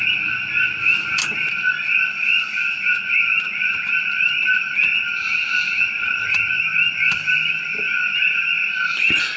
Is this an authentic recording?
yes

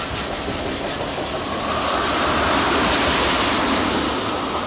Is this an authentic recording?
yes